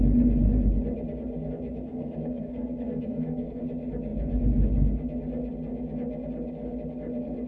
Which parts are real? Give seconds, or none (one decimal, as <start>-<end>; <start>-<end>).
0.0-1.9; 3.6-7.5